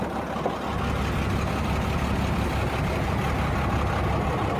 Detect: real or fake real